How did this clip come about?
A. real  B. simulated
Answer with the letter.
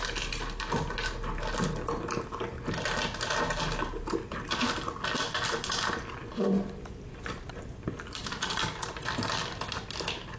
A